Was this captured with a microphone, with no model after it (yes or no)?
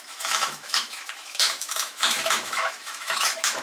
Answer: no